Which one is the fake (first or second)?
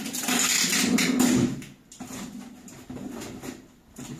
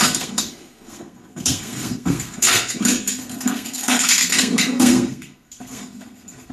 second